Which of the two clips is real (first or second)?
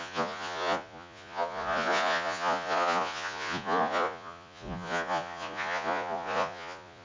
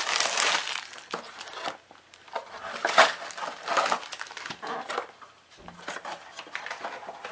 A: second